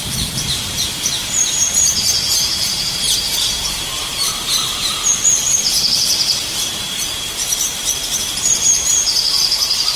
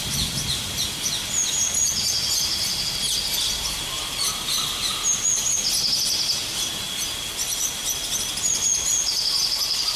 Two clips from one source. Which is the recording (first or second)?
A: second